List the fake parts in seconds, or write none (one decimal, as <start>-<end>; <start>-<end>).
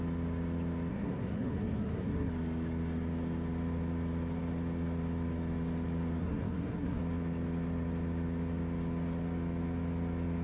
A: 0.9-2.3; 6.2-7.0